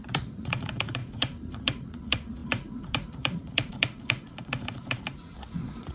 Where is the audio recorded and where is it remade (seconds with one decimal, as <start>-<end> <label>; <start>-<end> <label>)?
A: 0.0-5.9 remade